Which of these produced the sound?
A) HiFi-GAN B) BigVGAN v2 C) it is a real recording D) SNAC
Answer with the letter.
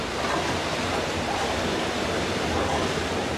C